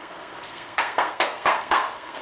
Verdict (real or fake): fake